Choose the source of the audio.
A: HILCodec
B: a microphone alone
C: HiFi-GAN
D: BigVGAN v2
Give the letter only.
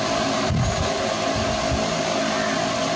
B